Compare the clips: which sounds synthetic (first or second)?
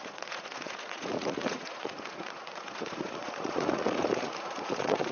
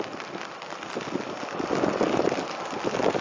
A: first